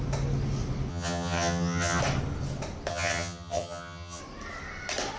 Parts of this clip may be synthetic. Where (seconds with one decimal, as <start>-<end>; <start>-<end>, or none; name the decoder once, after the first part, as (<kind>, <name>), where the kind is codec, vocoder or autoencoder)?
0.9-2.0 (vocoder, HiFi-GAN); 2.9-4.2